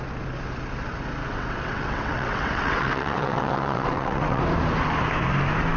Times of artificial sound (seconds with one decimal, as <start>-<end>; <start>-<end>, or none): 1.2-4.4